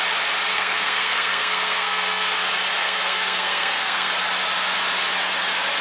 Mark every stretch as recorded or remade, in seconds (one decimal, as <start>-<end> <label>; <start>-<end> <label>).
0.0-0.5 recorded; 0.5-2.4 remade; 2.4-2.8 recorded; 2.8-4.1 remade; 4.1-5.8 recorded